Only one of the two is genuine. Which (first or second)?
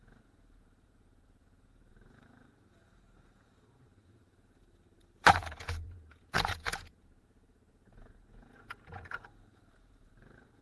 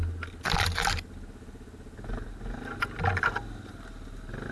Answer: second